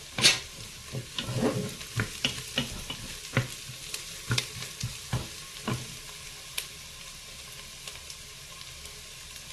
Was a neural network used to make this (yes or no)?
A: no